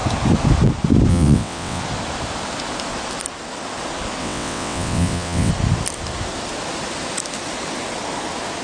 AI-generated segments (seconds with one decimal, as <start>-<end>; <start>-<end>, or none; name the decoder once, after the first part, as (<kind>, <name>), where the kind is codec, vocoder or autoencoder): 1.1-1.8 (vocoder, WaveNeXt); 4.2-5.5